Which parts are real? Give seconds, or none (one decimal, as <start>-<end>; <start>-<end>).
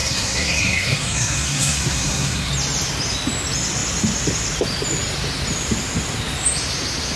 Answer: 2.5-7.2